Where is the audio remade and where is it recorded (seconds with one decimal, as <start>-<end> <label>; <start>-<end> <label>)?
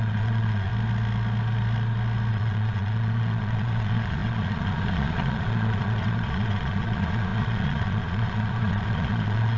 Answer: 0.0-0.7 remade; 0.7-2.3 recorded; 2.3-9.6 remade